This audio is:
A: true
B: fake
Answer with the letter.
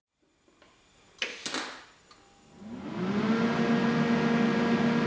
A